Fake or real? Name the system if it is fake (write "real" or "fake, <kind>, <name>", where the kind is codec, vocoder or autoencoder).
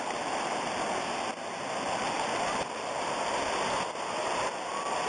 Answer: real